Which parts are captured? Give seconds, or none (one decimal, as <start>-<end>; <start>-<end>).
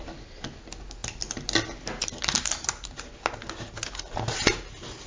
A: 0.0-5.1